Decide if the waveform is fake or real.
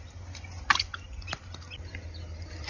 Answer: real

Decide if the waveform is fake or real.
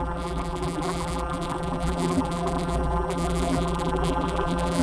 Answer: fake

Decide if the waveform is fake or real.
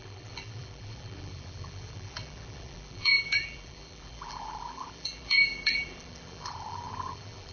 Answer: fake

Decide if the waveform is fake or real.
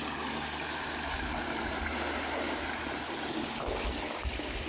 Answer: real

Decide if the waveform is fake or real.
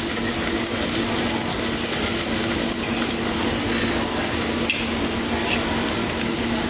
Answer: real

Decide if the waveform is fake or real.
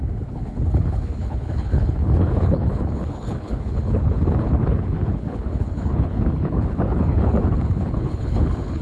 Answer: fake